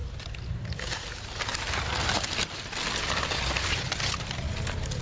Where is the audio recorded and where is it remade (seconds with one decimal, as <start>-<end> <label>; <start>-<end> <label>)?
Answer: 0.0-1.1 remade; 1.1-5.0 recorded